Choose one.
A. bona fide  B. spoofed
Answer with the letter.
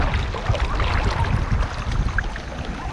A